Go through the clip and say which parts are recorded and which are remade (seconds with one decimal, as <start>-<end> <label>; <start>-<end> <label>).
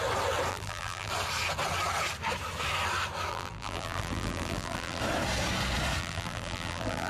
0.0-0.5 recorded; 0.5-1.1 remade; 1.1-3.3 recorded; 3.3-5.0 remade; 5.0-6.0 recorded; 6.0-7.1 remade